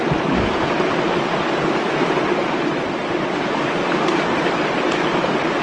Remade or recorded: recorded